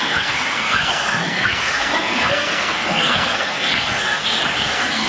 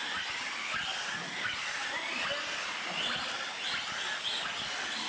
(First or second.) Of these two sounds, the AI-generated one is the first